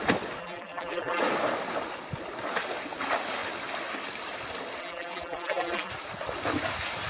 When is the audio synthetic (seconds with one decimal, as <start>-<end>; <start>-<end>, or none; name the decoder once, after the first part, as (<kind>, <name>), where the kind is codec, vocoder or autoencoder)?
0.4-1.2 (vocoder, BigVGAN v2); 4.8-5.9